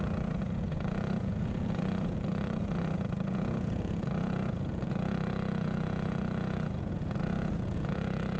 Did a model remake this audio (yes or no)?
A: yes